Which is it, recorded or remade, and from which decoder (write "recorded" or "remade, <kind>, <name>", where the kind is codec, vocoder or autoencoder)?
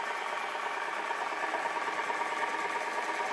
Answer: recorded